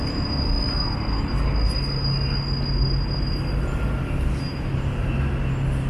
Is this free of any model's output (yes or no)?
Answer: yes